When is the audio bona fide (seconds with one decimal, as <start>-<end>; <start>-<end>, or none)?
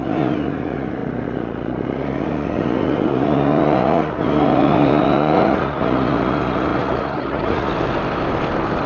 7.7-8.9